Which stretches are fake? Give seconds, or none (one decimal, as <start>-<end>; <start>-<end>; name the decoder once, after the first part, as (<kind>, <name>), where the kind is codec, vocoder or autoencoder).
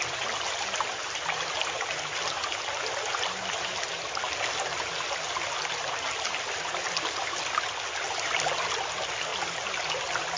none